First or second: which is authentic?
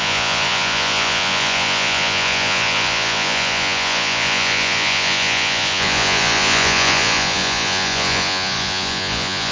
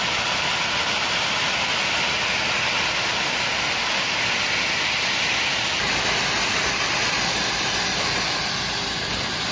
second